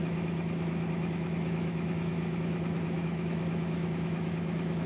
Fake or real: fake